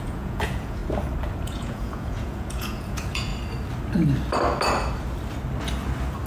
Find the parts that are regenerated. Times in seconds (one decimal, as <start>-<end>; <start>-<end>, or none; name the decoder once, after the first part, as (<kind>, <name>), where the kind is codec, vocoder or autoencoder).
0.0-0.8 (vocoder, Vocos); 1.4-3.3